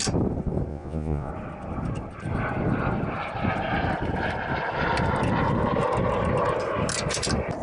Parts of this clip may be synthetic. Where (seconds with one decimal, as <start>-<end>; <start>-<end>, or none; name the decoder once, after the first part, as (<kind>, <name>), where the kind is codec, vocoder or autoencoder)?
0.7-1.3 (vocoder, Vocos)